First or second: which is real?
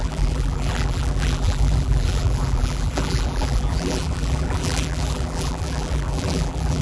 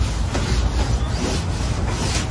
second